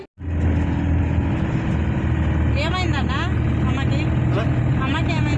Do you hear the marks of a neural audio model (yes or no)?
no